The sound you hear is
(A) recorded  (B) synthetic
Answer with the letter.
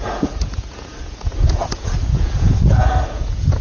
B